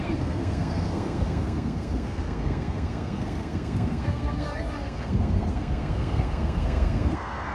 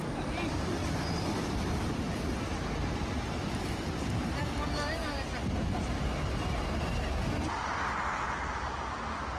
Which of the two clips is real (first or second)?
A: second